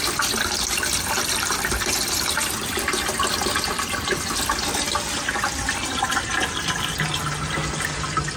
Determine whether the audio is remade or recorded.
recorded